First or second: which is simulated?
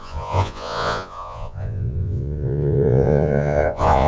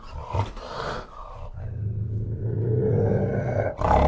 first